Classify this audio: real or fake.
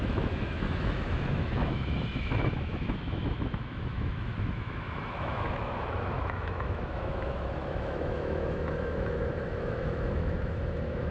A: fake